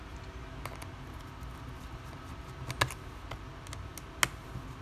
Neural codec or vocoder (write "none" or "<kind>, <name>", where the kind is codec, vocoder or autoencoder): none